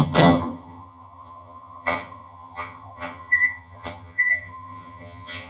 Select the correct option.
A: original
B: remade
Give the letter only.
B